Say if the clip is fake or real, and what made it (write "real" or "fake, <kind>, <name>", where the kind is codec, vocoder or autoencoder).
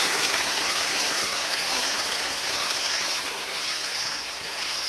fake, codec, SNAC